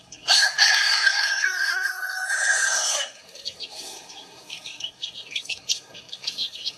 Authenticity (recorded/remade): remade